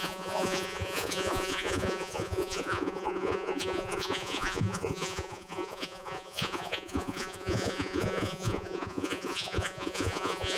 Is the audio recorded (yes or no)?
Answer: no